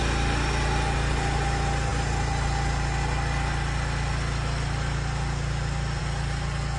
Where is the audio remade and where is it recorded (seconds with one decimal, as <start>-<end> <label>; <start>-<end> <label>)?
0.0-6.8 recorded